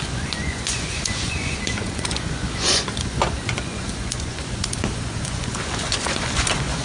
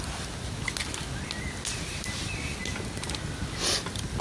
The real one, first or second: second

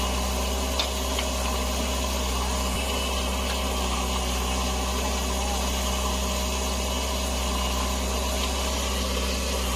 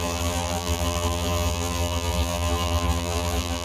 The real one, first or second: first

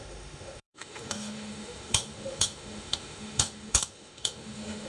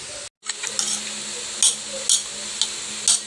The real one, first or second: second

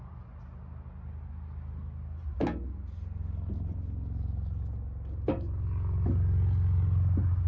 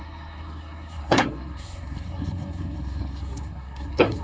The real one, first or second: first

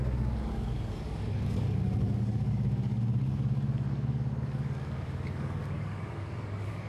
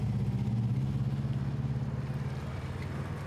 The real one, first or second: second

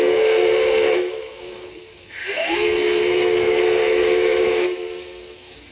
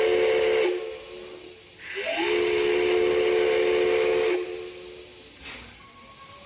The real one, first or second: second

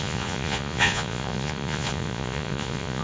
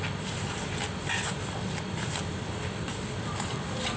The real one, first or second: second